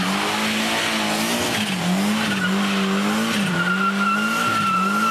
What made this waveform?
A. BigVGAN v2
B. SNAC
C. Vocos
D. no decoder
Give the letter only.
D